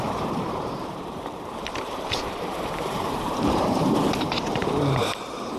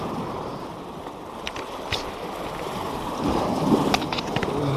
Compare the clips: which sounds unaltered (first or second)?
second